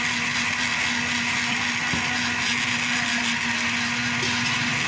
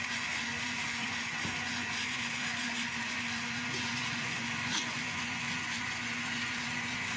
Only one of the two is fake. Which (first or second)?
second